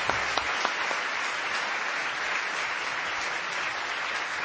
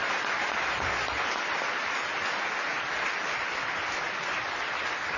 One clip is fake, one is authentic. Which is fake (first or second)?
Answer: second